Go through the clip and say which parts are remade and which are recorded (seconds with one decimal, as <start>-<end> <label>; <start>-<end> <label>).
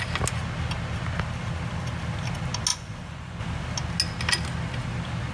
0.0-2.7 recorded; 2.7-3.4 remade; 3.4-5.3 recorded